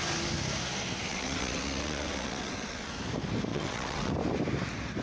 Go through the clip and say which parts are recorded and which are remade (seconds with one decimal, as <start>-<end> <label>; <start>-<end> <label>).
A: 0.0-1.1 recorded; 1.1-2.9 remade; 2.9-3.5 recorded; 3.5-4.1 remade; 4.1-5.0 recorded

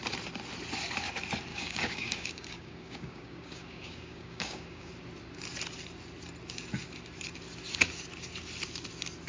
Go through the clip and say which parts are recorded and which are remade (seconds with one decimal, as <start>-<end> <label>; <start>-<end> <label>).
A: 0.0-1.5 recorded; 1.5-4.9 remade; 4.9-9.3 recorded

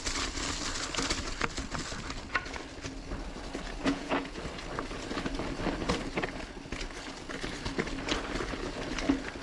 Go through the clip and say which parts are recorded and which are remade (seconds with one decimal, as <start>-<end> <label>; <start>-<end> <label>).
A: 0.0-3.8 recorded; 3.8-4.4 remade; 4.4-9.4 recorded

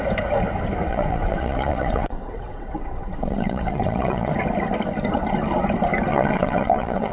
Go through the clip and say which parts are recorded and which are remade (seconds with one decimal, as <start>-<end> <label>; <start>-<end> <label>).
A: 0.0-0.9 recorded; 0.9-4.3 remade; 4.3-6.1 recorded; 6.1-7.1 remade